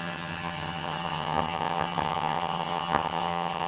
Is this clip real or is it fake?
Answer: fake